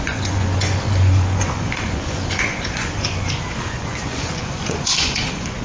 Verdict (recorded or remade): remade